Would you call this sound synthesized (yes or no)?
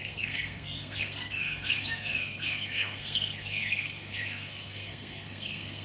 yes